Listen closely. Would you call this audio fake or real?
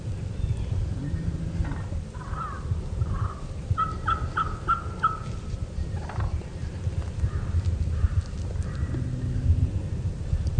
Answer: real